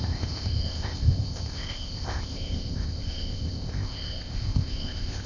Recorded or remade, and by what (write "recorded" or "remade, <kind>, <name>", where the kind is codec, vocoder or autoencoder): remade, codec, ZipCodec